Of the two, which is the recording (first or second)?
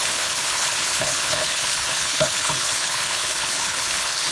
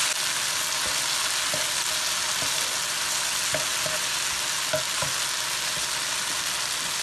second